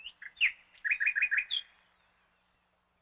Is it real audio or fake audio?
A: real